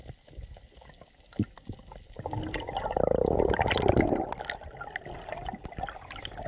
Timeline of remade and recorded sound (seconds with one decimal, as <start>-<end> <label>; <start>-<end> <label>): 0.0-6.5 recorded